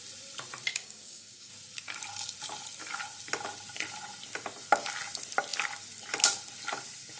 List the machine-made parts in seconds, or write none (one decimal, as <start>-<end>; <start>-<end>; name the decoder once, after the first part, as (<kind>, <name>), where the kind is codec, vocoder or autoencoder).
0.7-1.5 (codec, DAC)